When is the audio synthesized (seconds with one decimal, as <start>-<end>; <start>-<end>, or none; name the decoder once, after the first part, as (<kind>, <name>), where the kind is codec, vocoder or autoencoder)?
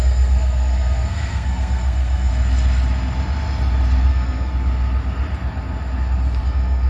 0.0-2.3 (codec, SNAC); 4.1-4.5; 6.4-6.9